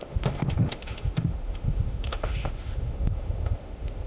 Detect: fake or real fake